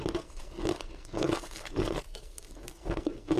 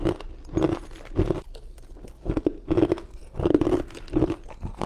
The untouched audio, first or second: second